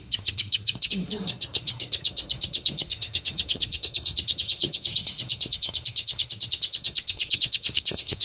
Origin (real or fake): fake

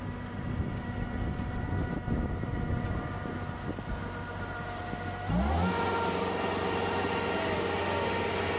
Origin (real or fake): real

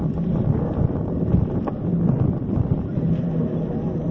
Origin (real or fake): real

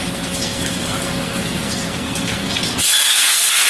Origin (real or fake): fake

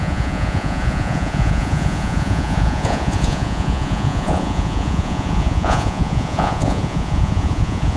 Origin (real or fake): fake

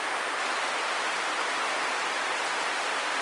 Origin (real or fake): real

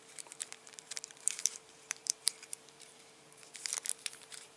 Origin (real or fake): fake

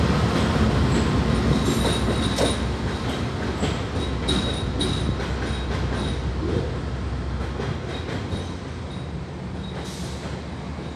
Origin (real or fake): real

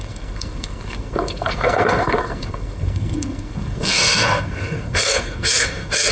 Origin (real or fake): fake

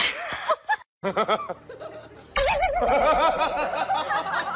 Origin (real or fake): real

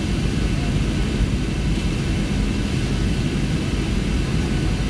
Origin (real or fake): real